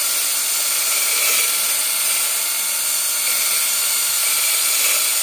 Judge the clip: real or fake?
fake